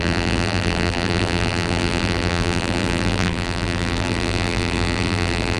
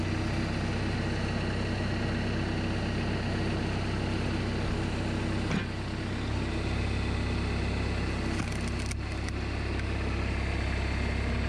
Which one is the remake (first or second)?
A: first